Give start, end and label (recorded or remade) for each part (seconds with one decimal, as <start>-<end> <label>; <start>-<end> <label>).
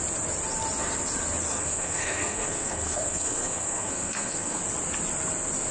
0.0-1.5 recorded; 1.5-4.6 remade; 4.6-5.7 recorded